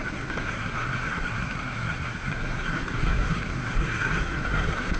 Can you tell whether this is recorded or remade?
remade